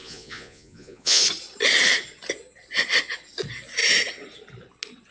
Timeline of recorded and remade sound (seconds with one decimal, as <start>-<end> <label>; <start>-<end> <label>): 0.0-1.2 remade; 1.2-5.1 recorded